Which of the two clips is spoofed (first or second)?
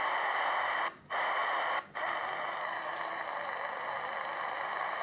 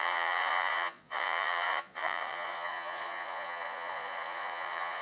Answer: second